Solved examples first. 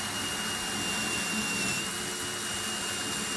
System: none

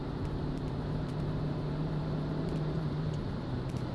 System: vocoder, BigVGAN v2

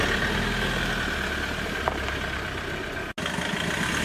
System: none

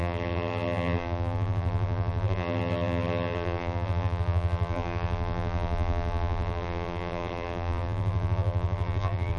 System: vocoder, BigVGAN v2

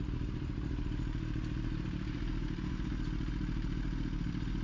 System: vocoder, BigVGAN v2